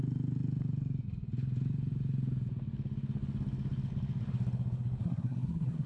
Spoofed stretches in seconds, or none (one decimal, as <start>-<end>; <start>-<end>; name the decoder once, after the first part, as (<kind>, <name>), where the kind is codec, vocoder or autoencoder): 5.0-5.9 (codec, SNAC)